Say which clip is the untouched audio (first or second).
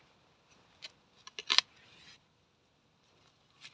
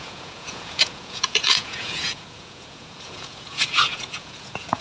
first